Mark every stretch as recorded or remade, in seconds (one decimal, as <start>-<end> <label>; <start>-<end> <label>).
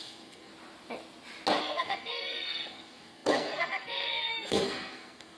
0.0-0.5 remade; 0.5-1.6 recorded; 1.6-5.4 remade